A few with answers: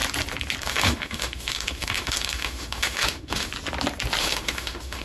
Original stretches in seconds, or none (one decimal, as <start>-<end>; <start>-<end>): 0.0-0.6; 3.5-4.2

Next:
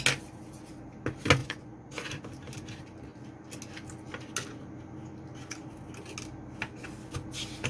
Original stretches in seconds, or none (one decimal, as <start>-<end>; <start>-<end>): 0.0-1.4; 2.1-7.7

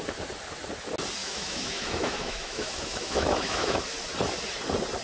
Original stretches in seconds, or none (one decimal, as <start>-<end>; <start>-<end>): 0.0-1.2; 3.8-5.0